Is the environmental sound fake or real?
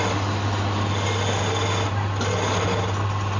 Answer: real